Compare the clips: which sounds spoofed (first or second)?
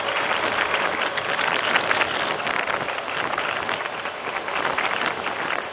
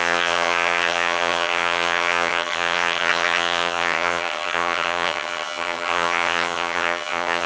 second